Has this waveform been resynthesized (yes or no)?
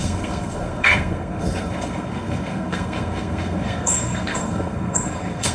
yes